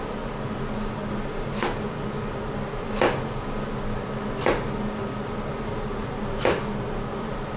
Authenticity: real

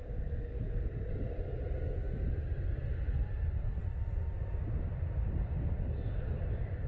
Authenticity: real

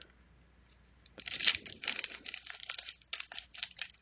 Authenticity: real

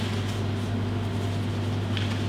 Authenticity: real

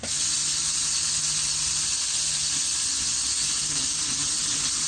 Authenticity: real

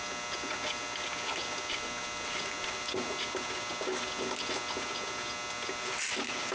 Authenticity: real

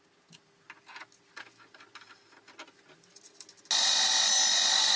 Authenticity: real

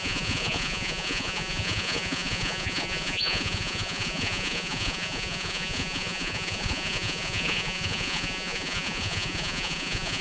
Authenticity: fake